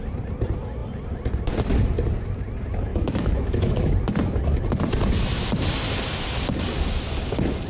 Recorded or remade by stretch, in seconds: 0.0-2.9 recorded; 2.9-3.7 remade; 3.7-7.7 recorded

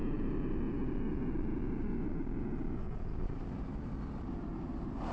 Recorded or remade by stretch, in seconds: 0.0-5.1 recorded

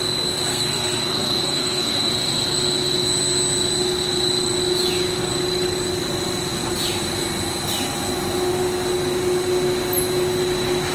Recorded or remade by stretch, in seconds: 0.0-0.5 recorded; 0.5-2.1 remade; 2.1-10.9 recorded

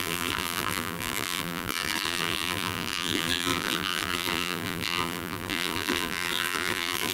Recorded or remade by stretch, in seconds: 0.0-7.1 remade

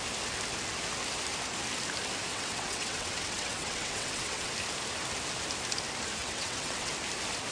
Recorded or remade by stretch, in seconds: 0.0-2.3 recorded; 2.3-4.5 remade; 4.5-6.2 recorded; 6.2-6.9 remade; 6.9-7.5 recorded

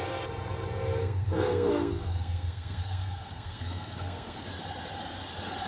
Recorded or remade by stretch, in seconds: 0.0-1.0 recorded; 1.0-4.4 remade; 4.4-5.7 recorded

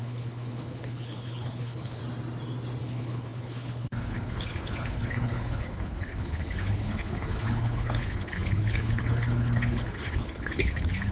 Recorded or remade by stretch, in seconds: 0.0-2.0 remade; 2.0-2.8 recorded; 2.8-11.1 remade